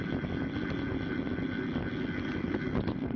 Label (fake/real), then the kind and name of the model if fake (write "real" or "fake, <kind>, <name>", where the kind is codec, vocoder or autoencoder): real